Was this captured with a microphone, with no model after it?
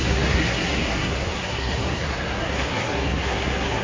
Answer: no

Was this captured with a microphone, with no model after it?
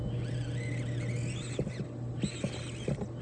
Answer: yes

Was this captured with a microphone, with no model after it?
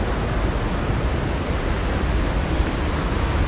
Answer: yes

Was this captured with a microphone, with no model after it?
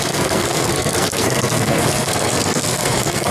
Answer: no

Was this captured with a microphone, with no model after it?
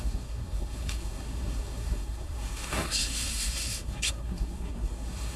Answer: no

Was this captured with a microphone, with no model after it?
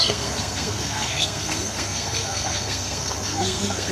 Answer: no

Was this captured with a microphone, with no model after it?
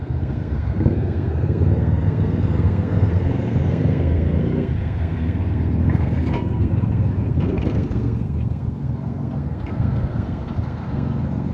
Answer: no